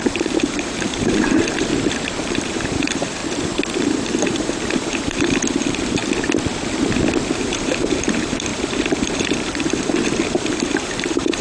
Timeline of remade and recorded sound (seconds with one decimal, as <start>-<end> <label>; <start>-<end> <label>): 0.0-1.7 remade; 1.7-2.2 recorded; 2.2-3.2 remade; 3.2-3.8 recorded; 3.8-6.0 remade; 6.0-7.3 recorded; 7.3-11.4 remade